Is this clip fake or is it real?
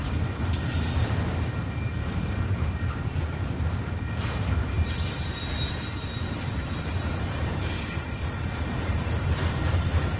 fake